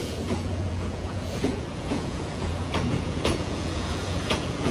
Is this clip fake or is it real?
fake